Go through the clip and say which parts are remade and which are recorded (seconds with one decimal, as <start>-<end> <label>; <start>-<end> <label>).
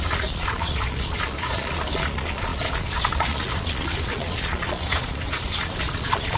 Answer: 0.0-6.4 remade